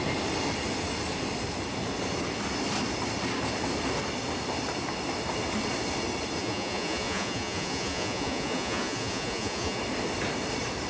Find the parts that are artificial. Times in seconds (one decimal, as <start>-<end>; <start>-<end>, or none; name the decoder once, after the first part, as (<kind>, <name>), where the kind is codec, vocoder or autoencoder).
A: 6.4-9.8 (vocoder, Vocos)